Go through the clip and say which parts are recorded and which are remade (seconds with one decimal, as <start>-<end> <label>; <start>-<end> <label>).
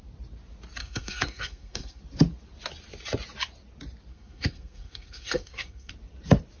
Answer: 0.0-0.8 recorded; 0.8-2.0 remade; 2.0-4.1 recorded; 4.1-5.9 remade; 5.9-6.6 recorded